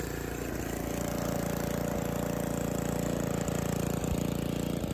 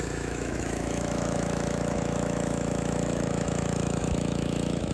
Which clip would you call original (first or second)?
first